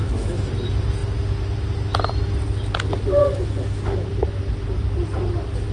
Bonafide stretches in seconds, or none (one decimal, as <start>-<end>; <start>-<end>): 0.5-3.2; 4.1-5.7